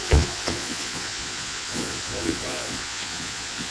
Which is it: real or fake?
fake